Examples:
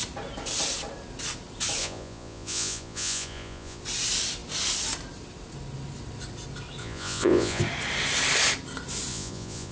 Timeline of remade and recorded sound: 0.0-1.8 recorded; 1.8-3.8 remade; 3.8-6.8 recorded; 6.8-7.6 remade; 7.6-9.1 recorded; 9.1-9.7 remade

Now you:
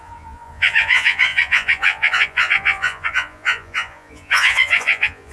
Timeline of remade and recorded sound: 0.0-5.3 remade

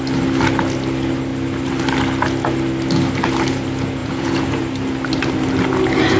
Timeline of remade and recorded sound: 0.0-4.0 recorded; 4.0-4.6 remade; 4.6-6.2 recorded

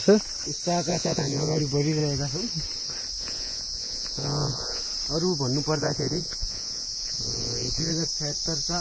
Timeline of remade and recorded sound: 0.0-0.9 recorded; 0.9-1.6 remade; 1.6-3.2 recorded; 3.2-4.8 remade; 4.8-5.8 recorded; 5.8-7.9 remade; 7.9-8.8 recorded

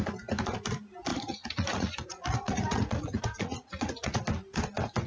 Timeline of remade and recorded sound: 0.0-1.1 recorded; 1.1-4.2 remade; 4.2-5.1 recorded

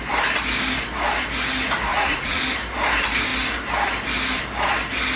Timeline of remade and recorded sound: 0.0-1.9 recorded; 1.9-2.4 remade; 2.4-5.2 recorded

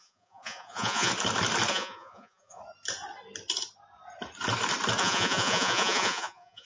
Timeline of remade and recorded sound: 0.0-1.1 remade; 1.1-1.7 recorded; 1.7-2.6 remade; 2.6-5.0 recorded; 5.0-6.6 remade